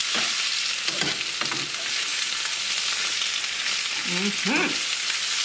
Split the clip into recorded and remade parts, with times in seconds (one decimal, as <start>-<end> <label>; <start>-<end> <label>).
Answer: 0.0-5.4 recorded